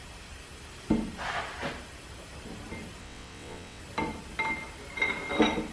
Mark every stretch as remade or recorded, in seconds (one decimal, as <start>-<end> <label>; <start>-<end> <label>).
0.0-3.0 recorded; 3.0-3.8 remade; 3.8-5.7 recorded

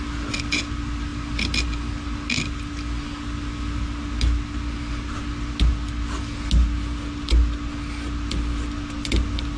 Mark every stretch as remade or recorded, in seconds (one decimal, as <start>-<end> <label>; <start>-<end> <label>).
0.0-9.6 recorded